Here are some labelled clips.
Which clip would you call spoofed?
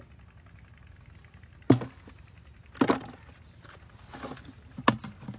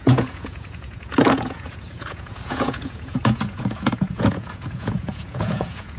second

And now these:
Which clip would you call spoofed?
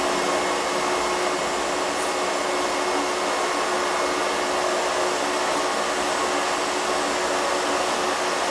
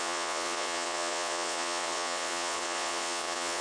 second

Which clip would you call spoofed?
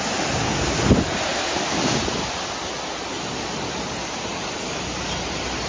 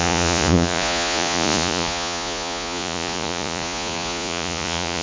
second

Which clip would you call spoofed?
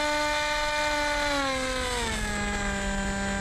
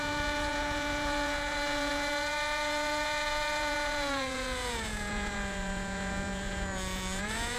second